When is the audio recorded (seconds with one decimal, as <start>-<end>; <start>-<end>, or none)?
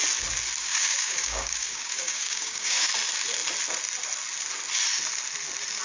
0.0-0.6; 2.9-5.8